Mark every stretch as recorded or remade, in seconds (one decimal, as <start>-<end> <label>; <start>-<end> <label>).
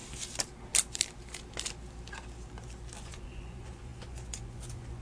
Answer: 0.0-3.0 recorded; 3.0-5.0 remade